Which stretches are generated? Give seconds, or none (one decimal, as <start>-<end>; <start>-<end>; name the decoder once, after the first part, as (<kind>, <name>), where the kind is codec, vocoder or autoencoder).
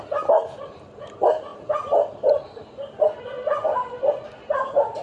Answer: none